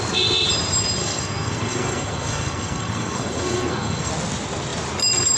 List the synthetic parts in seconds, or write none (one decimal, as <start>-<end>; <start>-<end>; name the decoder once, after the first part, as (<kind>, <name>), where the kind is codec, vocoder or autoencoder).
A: 1.0-4.1 (codec, SNAC)